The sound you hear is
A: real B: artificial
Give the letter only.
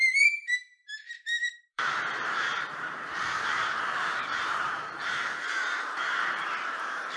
B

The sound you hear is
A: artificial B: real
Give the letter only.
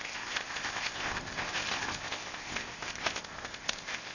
A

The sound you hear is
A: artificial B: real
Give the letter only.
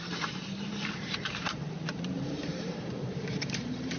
A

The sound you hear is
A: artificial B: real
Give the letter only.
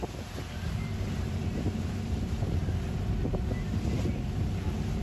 A